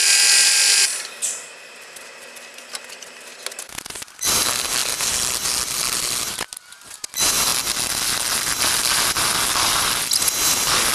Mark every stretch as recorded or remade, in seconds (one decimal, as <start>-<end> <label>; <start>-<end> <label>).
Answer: 0.0-1.2 remade; 1.2-4.8 recorded; 4.8-6.2 remade; 6.2-10.9 recorded